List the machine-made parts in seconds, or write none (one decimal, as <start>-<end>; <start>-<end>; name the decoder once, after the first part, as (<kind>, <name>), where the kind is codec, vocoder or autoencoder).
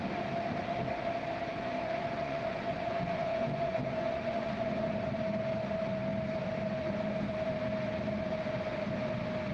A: 1.5-5.1 (vocoder, Vocos)